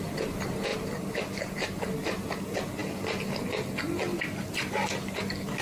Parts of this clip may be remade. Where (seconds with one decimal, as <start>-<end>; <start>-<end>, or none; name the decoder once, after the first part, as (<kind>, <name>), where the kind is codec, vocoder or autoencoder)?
0.7-1.8 (vocoder, BigVGAN v2)